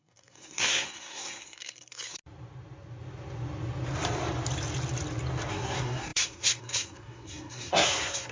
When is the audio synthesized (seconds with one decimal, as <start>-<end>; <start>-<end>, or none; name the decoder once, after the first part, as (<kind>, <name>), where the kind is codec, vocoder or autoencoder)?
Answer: 0.0-2.2 (codec, SNAC); 5.5-8.3